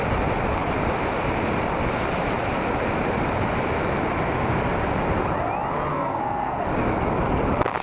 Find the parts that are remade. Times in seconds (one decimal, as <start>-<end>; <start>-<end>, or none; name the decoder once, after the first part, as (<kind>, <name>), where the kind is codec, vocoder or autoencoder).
5.9-6.6 (codec, SNAC)